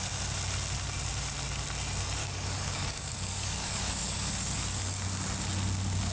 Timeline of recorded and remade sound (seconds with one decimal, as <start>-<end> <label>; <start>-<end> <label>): 0.0-2.2 recorded; 2.2-4.8 remade; 4.8-6.1 recorded